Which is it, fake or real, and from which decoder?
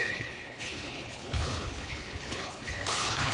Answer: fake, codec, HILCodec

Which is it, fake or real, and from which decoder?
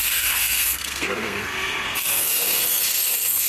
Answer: fake, codec, SNAC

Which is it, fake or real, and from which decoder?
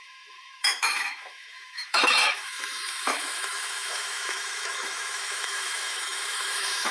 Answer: fake, autoencoder, DAC-VAE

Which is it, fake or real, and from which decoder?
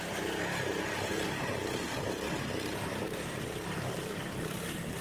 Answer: real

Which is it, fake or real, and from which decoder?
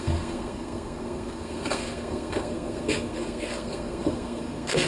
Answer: fake, codec, SNAC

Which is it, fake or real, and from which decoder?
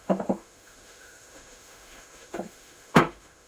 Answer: fake, autoencoder, DAC-VAE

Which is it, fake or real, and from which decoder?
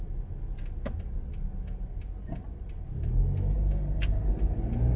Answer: real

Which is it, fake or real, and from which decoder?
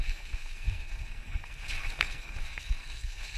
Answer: fake, codec, SNAC